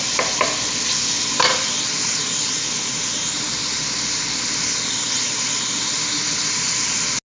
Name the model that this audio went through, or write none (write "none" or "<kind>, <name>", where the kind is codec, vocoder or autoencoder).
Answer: none